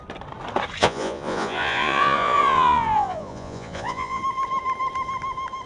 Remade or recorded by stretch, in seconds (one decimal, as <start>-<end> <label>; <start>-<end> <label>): 0.0-0.8 recorded; 0.8-4.2 remade; 4.2-5.7 recorded